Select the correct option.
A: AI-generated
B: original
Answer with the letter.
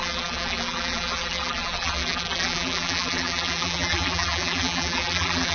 A